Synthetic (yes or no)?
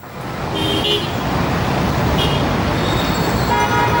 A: no